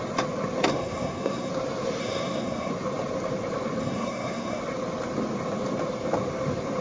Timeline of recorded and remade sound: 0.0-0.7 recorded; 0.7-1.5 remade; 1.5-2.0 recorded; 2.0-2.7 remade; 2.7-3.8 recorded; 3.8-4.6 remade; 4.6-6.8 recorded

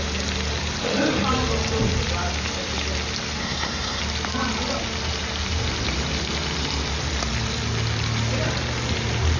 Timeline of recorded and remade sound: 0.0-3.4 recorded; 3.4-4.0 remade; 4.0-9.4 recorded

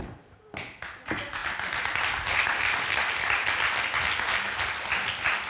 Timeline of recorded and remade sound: 0.0-5.5 recorded

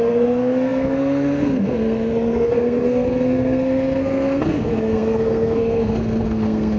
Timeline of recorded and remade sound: 0.0-6.8 remade

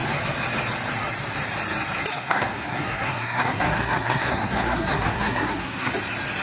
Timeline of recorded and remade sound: 0.0-2.1 recorded; 2.1-5.9 remade; 5.9-6.4 recorded